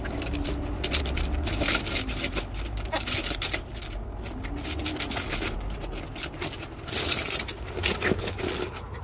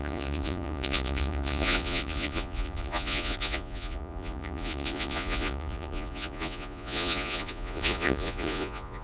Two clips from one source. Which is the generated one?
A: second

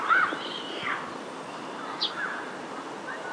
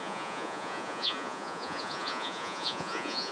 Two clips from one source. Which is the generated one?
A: second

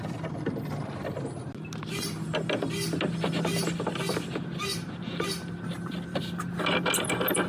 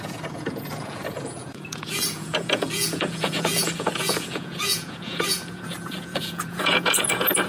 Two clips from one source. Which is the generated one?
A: second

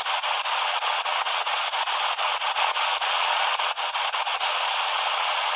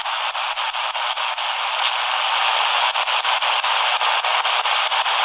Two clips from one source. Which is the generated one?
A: first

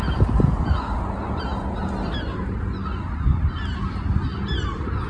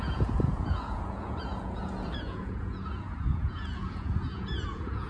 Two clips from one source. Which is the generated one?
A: second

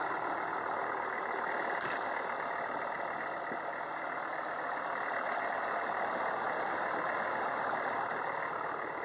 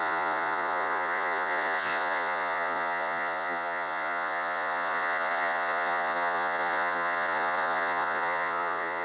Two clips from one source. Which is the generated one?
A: second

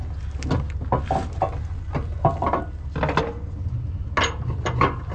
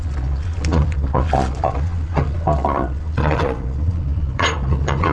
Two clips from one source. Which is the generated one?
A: second